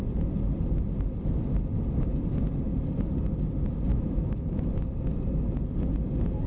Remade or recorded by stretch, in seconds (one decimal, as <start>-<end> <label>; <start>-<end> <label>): 0.0-3.9 recorded; 3.9-4.7 remade; 4.7-6.5 recorded